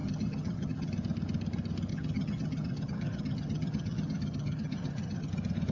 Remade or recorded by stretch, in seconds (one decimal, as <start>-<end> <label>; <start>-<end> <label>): 0.0-0.9 remade; 0.9-1.9 recorded; 1.9-5.3 remade; 5.3-5.7 recorded